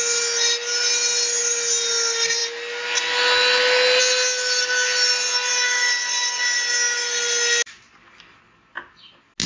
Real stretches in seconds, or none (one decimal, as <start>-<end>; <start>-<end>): 0.0-9.5